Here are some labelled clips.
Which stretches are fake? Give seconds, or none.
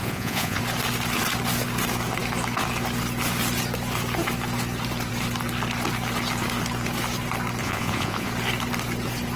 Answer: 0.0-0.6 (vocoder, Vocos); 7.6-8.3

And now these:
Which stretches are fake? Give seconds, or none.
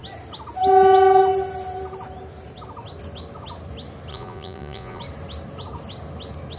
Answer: 4.1-5.0 (vocoder, Vocos)